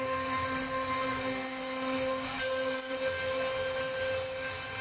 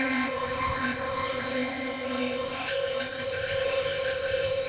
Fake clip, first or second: second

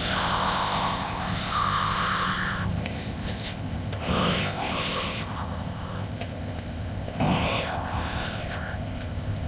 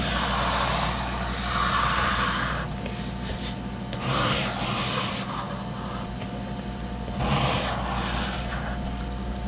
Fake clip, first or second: first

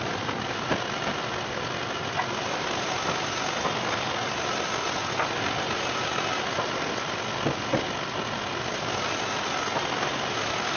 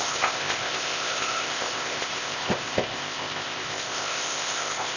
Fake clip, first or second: second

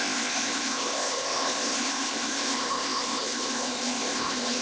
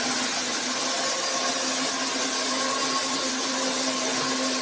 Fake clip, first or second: first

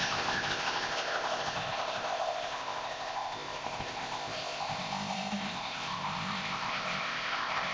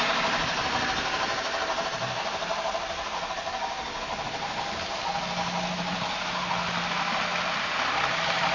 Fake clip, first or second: first